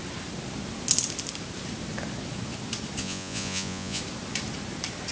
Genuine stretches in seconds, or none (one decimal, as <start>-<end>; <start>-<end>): 0.0-3.0; 4.0-5.1